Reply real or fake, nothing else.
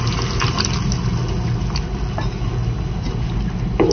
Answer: real